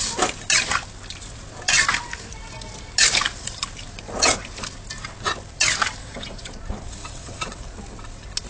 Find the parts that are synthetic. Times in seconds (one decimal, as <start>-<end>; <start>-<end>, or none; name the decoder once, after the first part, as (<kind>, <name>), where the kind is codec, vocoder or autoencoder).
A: 6.0-6.5 (vocoder, WaveNeXt); 7.0-7.6